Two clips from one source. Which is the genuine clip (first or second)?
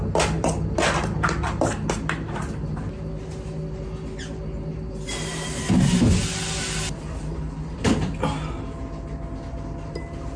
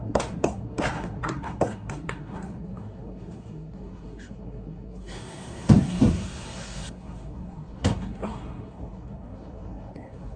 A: first